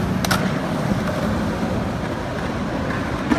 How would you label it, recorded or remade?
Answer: recorded